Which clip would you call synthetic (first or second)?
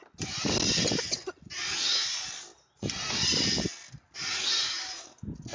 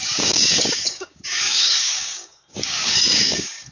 second